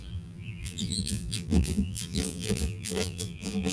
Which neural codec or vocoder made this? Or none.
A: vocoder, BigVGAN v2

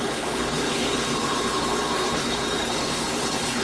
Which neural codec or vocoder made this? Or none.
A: codec, HILCodec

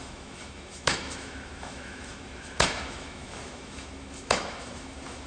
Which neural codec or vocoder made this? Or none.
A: autoencoder, DAC-VAE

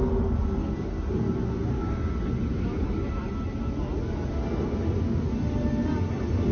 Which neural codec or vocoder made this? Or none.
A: none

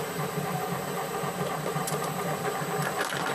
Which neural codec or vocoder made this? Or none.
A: vocoder, BigVGAN v2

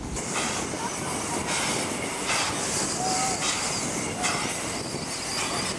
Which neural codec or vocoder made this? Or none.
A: none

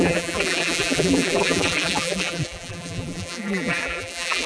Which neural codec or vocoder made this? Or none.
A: vocoder, BigVGAN v2